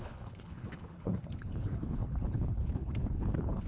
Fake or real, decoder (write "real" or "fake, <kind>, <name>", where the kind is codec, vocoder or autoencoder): fake, codec, HILCodec